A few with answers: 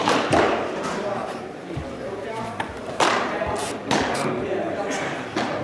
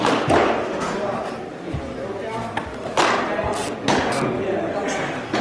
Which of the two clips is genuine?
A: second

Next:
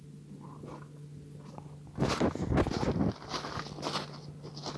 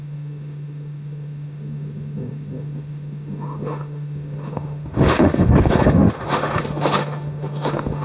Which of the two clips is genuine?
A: first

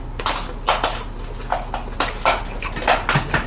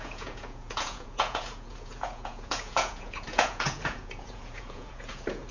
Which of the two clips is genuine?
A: first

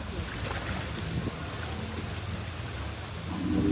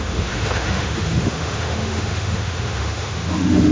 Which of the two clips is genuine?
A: first